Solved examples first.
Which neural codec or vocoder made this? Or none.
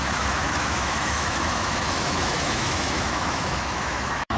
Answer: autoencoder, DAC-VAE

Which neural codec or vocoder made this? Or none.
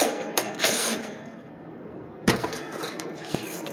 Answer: codec, SNAC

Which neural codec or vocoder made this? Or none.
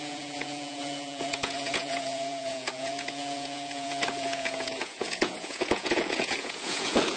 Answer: vocoder, Vocos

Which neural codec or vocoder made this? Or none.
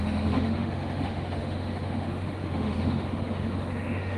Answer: autoencoder, DAC-VAE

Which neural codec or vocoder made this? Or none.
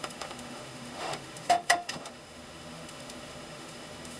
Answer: autoencoder, DAC-VAE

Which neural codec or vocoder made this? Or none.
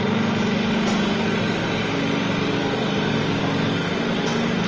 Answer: none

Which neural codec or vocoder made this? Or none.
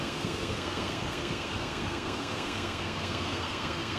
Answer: codec, SNAC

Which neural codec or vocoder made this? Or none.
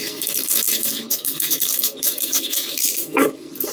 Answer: codec, SNAC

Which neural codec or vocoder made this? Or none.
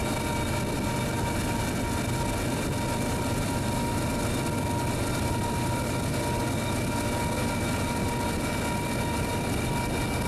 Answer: none